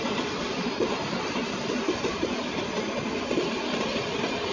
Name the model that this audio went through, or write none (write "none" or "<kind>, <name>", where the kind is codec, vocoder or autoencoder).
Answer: none